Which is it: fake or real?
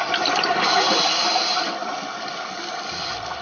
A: real